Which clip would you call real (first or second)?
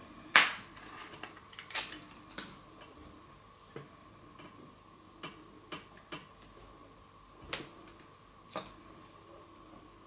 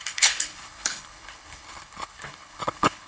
first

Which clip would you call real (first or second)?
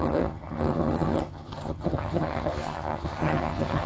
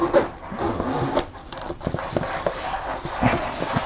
second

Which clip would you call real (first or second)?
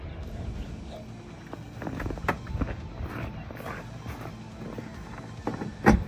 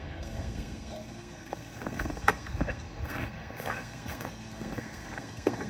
first